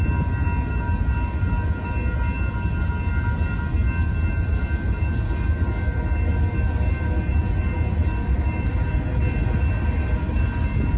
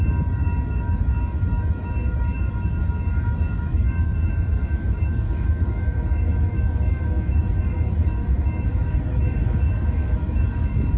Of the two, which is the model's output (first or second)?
second